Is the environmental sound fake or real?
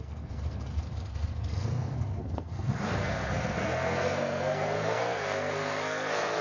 fake